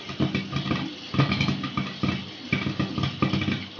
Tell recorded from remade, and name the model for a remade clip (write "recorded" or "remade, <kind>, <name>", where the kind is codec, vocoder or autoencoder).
recorded